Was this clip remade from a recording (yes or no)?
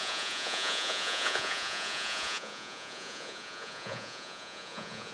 yes